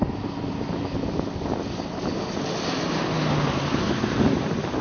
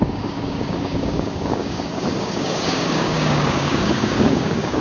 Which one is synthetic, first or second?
second